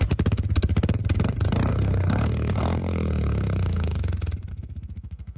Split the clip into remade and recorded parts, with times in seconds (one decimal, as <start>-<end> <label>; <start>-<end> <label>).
0.0-1.7 recorded; 1.7-4.0 remade; 4.0-4.5 recorded; 4.5-5.4 remade